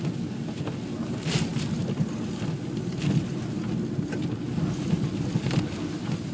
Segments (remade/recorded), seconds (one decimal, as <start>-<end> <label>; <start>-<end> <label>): 0.0-6.3 recorded